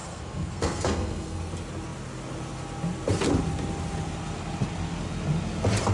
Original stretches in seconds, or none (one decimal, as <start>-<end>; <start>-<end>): 1.5-5.9